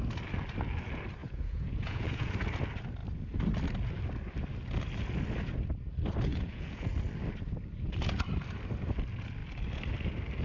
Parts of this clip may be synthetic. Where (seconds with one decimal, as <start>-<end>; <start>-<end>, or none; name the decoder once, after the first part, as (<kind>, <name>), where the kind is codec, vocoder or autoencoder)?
1.2-2.3 (vocoder, Vocos); 6.3-6.9